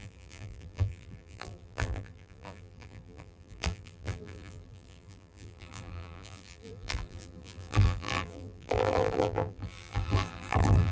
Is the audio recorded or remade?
remade